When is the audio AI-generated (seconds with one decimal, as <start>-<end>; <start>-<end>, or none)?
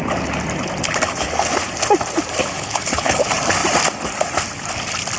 2.4-3.2